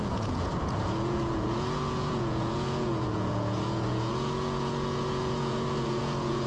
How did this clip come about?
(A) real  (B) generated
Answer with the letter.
B